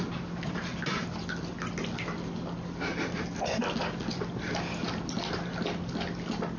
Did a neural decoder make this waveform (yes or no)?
no